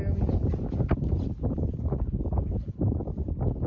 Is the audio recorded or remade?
recorded